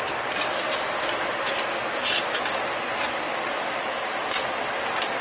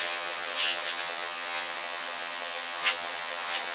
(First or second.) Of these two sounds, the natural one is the first